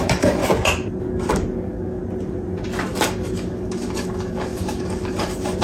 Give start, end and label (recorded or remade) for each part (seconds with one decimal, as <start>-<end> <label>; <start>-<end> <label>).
0.0-0.4 remade; 0.4-1.0 recorded; 1.0-2.0 remade; 2.0-2.9 recorded; 2.9-5.6 remade